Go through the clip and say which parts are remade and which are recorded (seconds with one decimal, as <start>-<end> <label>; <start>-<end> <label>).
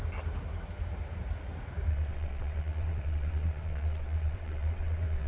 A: 0.0-1.9 recorded; 1.9-5.3 remade